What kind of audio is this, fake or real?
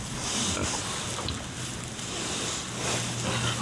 real